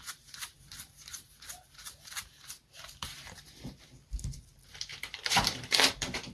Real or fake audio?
fake